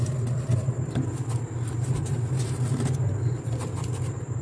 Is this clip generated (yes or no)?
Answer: no